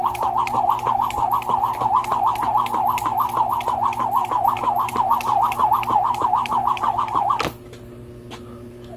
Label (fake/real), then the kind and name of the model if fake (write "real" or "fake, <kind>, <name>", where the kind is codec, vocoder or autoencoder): real